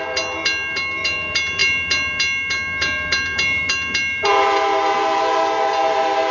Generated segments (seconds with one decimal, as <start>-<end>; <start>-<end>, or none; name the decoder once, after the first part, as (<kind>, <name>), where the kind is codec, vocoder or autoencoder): none